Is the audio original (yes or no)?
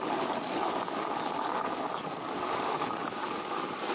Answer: no